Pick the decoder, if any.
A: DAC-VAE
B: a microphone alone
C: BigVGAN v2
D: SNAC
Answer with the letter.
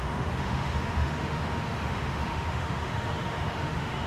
A